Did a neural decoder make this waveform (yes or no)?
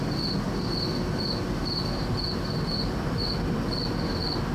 no